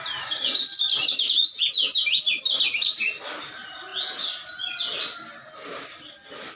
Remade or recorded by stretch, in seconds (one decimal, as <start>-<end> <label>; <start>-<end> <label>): 0.0-6.6 recorded